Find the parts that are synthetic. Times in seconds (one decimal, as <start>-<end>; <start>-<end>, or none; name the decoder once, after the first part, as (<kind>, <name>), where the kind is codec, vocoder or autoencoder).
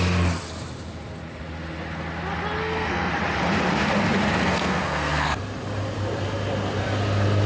2.6-3.1 (codec, SNAC); 4.4-5.4